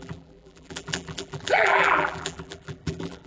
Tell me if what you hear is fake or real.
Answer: fake